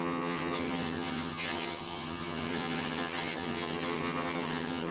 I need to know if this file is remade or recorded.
remade